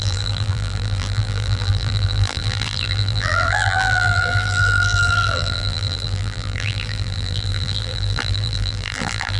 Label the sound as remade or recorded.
remade